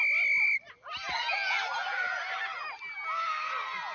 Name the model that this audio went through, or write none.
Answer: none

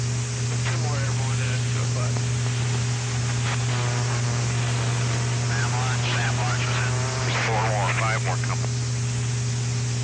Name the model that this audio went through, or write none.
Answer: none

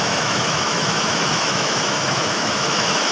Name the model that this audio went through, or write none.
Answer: autoencoder, DAC-VAE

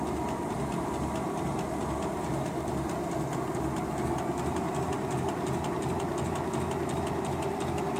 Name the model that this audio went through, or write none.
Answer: none